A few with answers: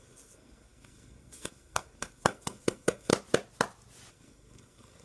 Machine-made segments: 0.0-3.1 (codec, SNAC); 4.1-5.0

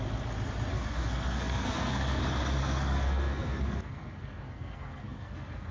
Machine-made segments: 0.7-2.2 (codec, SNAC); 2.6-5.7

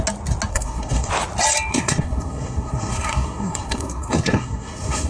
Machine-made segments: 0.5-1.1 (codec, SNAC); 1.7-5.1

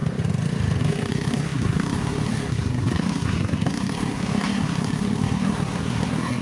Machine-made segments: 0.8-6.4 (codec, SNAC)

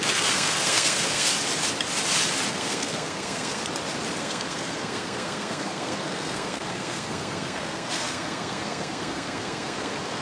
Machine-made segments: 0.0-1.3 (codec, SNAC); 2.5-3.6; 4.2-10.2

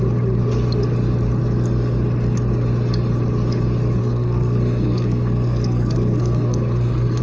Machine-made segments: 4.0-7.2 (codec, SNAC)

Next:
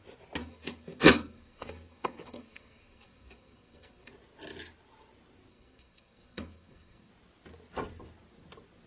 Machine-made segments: 0.4-4.1 (codec, SNAC); 5.5-7.1